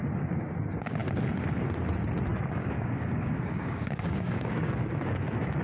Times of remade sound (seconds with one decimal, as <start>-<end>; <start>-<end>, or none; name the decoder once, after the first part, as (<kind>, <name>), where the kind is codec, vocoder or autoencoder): 2.3-5.6 (codec, DAC)

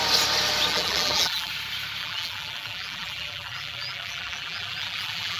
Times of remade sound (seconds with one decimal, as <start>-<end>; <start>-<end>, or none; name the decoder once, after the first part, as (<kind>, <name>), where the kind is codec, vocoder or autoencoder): 0.7-1.5 (vocoder, BigVGAN v2); 2.0-5.4

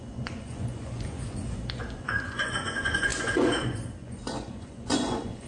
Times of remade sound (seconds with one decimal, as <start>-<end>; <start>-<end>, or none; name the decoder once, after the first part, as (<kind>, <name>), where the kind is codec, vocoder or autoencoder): 0.0-5.5 (vocoder, Vocos)

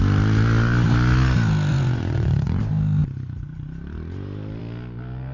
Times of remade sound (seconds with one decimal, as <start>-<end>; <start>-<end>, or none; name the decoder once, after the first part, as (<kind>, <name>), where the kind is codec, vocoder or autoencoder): 1.7-2.6 (vocoder, Vocos)